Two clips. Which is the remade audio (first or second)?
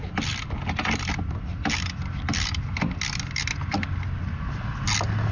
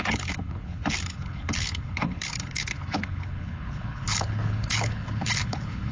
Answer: second